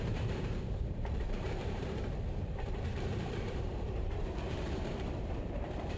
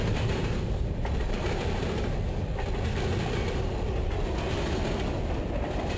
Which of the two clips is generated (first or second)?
first